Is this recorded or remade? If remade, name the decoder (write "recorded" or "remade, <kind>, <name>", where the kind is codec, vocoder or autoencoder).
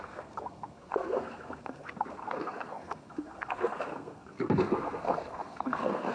remade, codec, SNAC